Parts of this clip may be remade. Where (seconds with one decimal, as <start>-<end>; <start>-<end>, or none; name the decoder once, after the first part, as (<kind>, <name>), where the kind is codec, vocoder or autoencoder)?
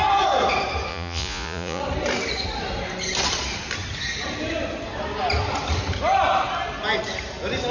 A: 0.9-1.8 (vocoder, Vocos)